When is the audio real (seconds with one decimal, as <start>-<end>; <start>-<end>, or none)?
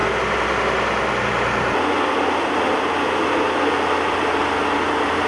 0.0-5.3